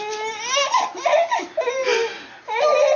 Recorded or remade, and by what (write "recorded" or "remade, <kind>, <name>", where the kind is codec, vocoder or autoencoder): recorded